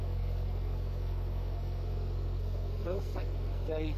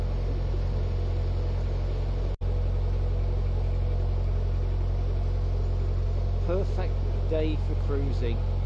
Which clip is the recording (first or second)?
second